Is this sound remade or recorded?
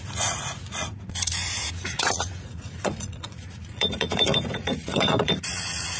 remade